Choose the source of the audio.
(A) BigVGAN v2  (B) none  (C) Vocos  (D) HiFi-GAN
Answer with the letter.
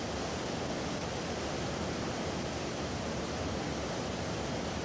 B